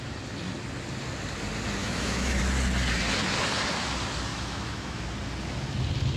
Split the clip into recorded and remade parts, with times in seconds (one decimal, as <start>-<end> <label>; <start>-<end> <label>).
0.0-1.8 recorded; 1.8-2.4 remade; 2.4-4.3 recorded; 4.3-5.0 remade; 5.0-6.2 recorded